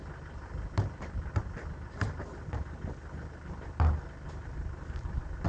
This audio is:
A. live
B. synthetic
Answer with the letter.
A